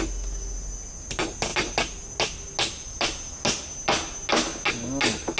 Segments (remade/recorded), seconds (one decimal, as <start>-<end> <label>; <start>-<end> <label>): 0.0-5.4 recorded